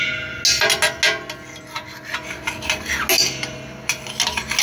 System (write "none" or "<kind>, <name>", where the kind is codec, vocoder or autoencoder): none